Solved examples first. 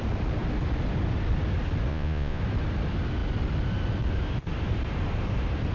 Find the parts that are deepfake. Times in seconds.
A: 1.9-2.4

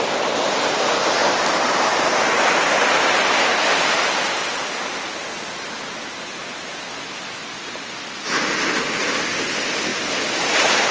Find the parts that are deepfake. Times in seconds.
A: 1.2-4.0; 9.9-10.9

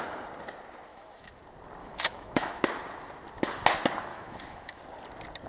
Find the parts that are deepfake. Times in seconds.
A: 0.9-1.4; 1.8-2.6; 4.1-4.8

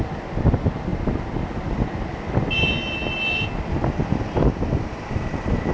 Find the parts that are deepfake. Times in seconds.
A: none

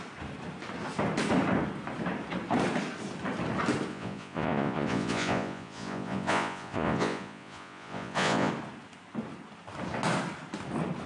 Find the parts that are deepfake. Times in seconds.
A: 3.9-8.5

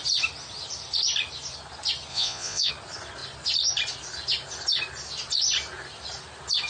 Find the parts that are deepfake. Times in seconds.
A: 2.1-2.7

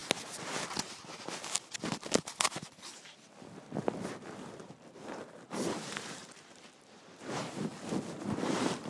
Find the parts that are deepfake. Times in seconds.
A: 4.1-7.7; 8.3-8.9

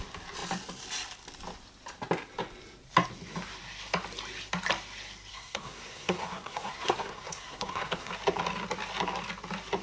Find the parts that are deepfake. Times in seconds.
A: 5.3-8.1